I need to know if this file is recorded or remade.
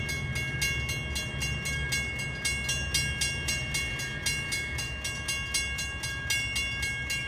recorded